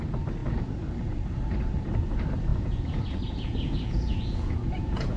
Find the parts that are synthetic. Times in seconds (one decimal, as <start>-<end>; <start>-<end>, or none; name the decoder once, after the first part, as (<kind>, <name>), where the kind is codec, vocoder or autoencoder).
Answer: 2.5-5.2 (vocoder, Vocos)